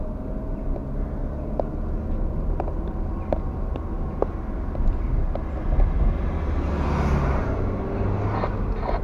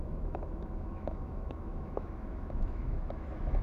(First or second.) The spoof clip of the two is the second